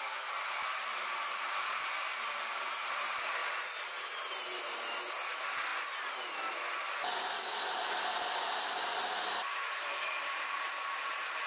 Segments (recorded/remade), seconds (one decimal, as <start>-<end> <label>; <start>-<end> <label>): 0.0-3.4 recorded; 3.4-5.0 remade; 5.0-9.5 recorded; 9.5-10.7 remade; 10.7-11.5 recorded